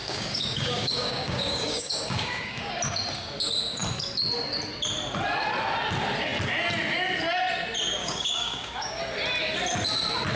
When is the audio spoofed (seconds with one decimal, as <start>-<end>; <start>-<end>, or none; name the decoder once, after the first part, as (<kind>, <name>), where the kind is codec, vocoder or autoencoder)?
0.0-2.7 (codec, DAC); 8.0-9.0